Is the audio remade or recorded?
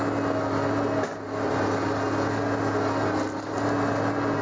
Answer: recorded